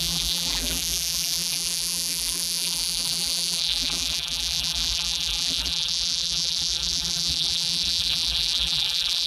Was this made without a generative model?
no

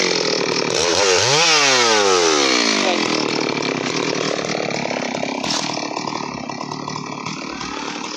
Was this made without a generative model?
yes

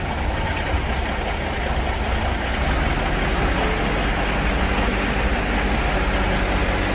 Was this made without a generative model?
yes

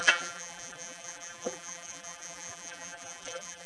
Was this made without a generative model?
no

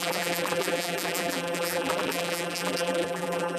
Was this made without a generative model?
no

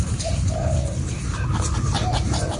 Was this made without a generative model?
no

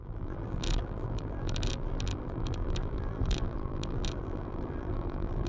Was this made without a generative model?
no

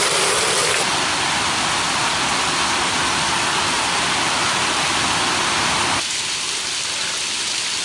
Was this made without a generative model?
yes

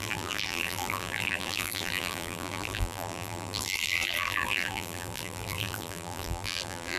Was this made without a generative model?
no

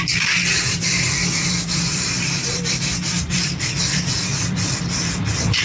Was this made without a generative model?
no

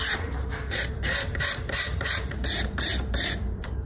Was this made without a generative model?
no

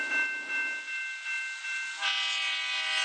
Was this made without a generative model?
yes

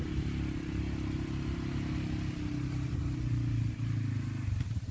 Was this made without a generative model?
yes